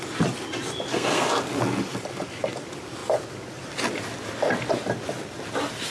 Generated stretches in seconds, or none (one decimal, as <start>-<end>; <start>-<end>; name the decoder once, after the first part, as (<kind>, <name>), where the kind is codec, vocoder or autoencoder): 0.9-1.4 (codec, SNAC)

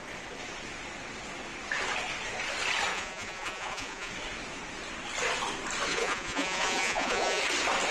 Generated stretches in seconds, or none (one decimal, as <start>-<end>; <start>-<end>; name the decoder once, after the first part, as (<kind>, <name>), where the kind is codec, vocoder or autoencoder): 2.9-4.1 (vocoder, Vocos); 5.9-7.4